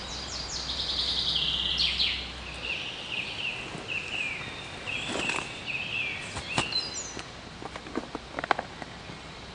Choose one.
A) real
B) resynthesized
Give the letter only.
A